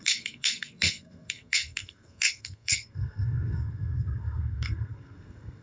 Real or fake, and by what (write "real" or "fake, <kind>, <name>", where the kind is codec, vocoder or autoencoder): fake, codec, SNAC